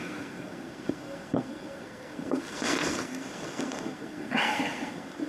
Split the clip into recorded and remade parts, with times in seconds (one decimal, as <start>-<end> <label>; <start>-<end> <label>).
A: 0.0-5.3 remade